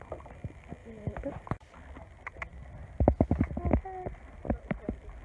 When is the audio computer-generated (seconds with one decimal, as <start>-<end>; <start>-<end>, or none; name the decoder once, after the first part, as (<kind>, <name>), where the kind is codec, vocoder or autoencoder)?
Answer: 0.8-1.7 (vocoder, BigVGAN v2)